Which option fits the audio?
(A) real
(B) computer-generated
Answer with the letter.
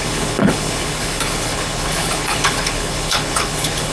B